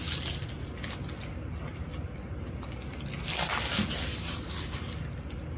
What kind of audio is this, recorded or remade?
recorded